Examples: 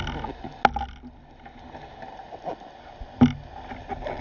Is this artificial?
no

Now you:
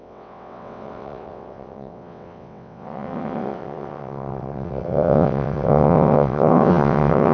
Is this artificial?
yes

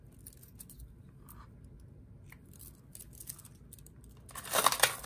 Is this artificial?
no